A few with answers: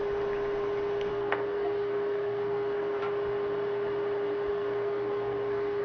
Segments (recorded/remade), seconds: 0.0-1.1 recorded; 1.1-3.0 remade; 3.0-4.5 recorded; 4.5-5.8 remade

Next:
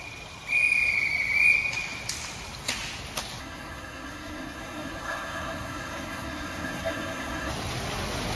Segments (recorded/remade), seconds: 0.0-3.4 recorded; 3.4-7.5 remade; 7.5-8.4 recorded

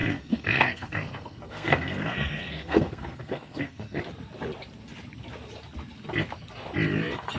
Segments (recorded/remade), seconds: 0.0-4.0 remade; 4.0-7.4 recorded